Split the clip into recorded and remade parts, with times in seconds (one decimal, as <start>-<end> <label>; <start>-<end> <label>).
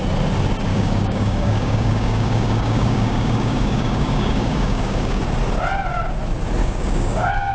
0.0-0.7 recorded; 0.7-5.2 remade; 5.2-6.6 recorded; 6.6-7.5 remade